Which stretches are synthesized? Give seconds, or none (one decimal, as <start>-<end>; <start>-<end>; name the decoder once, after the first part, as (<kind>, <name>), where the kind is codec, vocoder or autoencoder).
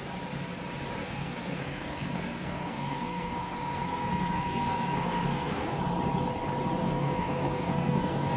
1.0-5.8 (codec, SNAC); 6.8-8.4